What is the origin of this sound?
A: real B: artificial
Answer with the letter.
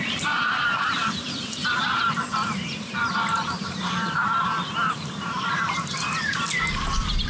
B